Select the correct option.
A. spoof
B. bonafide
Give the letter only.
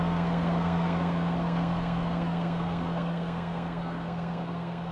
A